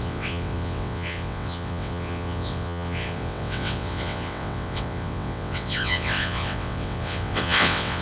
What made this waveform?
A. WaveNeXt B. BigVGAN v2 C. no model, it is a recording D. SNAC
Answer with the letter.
A